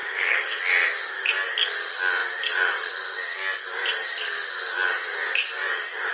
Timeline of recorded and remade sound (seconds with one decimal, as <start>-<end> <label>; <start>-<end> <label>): 0.0-0.6 remade; 0.6-6.1 recorded